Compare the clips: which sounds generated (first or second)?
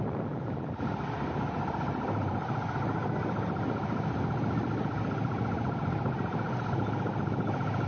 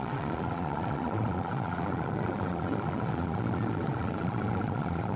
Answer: second